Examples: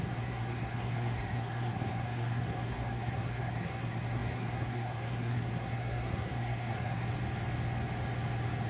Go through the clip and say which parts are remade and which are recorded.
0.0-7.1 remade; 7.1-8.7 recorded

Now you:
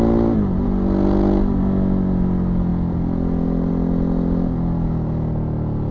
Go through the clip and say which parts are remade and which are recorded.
0.0-5.9 recorded